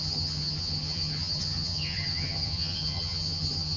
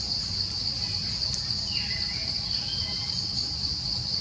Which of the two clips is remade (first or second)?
first